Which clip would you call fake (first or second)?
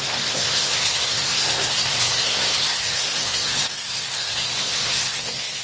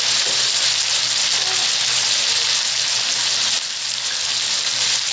first